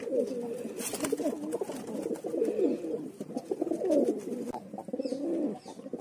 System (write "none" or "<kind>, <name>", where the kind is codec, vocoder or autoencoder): none